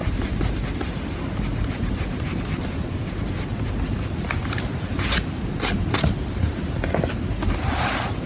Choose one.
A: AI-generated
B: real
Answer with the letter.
B